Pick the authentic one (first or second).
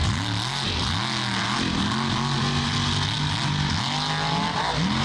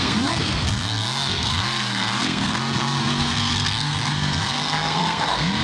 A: first